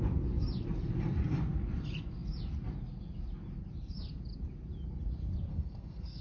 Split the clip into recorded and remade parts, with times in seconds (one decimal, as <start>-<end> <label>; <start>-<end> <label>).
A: 0.0-5.5 recorded; 5.5-6.2 remade